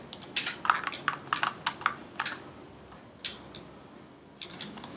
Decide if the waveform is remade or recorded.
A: recorded